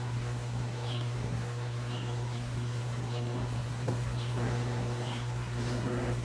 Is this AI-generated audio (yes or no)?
yes